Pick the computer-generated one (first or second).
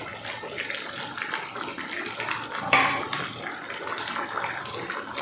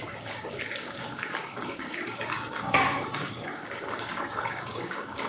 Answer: second